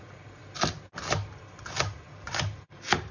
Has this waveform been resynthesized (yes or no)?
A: no